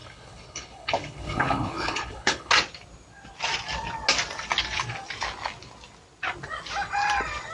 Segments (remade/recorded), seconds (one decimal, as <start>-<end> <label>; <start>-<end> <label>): 0.0-2.5 remade; 2.5-7.5 recorded